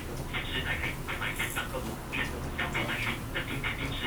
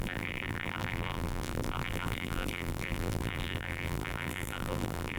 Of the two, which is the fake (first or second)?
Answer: second